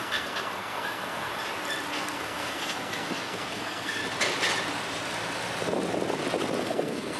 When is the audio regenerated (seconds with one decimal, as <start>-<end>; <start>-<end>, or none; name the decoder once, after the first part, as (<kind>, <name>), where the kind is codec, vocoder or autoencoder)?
0.0-1.3 (codec, SNAC); 1.9-4.0; 6.6-7.2